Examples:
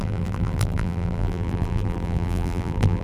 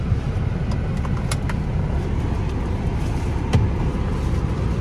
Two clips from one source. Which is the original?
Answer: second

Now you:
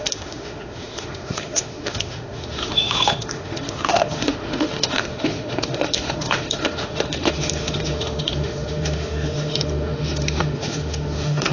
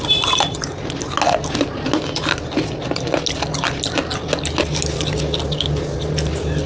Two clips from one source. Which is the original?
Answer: second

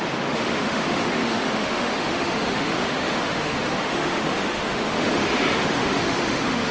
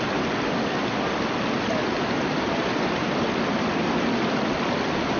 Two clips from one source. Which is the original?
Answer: second